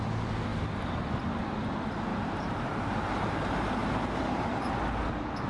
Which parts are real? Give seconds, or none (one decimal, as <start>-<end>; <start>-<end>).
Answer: 0.0-2.1; 3.3-5.5